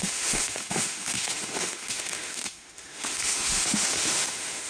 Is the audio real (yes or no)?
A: no